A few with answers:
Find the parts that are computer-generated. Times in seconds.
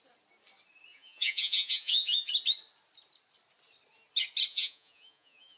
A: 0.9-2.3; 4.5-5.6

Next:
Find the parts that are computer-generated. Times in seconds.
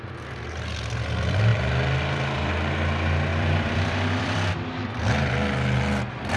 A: 1.5-2.5; 3.3-4.5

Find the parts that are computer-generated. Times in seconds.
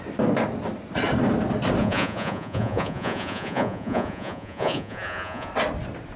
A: 1.8-5.5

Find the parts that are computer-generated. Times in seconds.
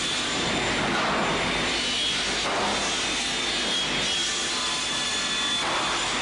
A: none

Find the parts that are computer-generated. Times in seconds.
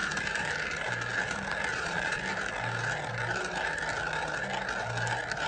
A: 1.7-2.2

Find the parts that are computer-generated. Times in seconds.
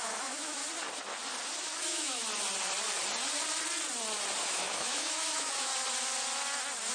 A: 0.0-0.6; 1.8-2.2; 4.4-5.7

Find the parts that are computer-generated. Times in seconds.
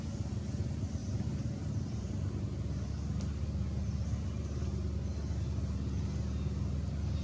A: 1.0-2.1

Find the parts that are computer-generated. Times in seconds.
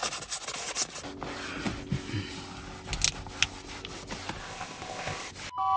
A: 4.4-5.3